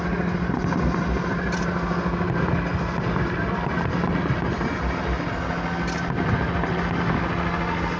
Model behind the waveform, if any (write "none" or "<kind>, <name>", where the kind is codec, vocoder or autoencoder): none